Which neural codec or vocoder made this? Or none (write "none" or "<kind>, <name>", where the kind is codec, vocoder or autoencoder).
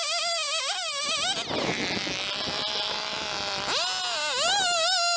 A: none